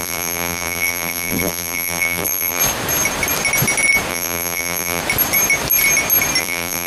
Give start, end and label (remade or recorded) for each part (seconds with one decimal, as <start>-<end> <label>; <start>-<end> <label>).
0.0-2.6 remade; 2.6-4.1 recorded; 4.1-5.0 remade; 5.0-6.4 recorded; 6.4-6.9 remade